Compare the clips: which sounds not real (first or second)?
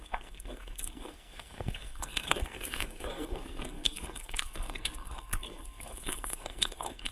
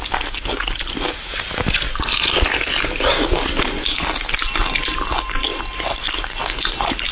first